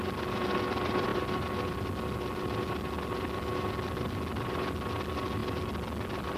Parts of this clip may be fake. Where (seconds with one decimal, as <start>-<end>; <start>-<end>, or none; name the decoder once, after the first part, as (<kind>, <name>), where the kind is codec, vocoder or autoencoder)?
none